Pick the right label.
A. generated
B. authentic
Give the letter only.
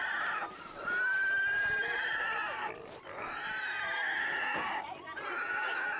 B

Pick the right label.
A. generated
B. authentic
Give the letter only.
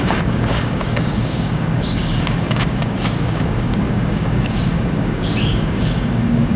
A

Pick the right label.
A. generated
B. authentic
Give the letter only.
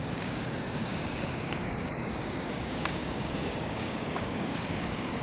A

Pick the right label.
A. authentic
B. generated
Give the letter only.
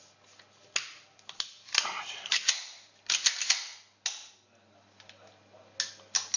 A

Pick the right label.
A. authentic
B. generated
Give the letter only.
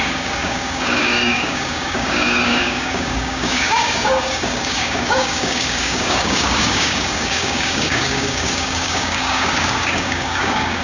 B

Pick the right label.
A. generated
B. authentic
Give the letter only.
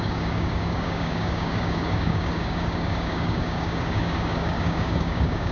A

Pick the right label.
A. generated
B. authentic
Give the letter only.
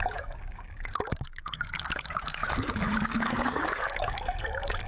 A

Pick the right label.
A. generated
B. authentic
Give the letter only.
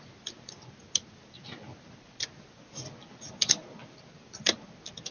B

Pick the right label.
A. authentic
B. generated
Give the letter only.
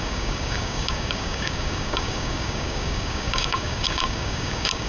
B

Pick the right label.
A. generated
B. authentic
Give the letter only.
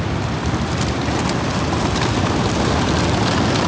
B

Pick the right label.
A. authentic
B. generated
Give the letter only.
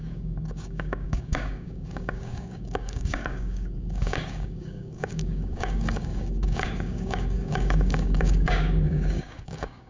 B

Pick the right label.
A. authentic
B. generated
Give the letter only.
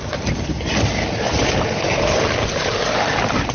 A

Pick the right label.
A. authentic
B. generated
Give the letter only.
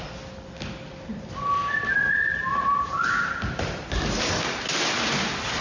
A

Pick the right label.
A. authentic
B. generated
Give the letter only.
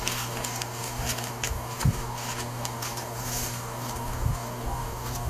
B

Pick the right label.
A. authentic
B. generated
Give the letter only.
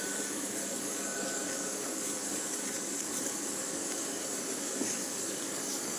B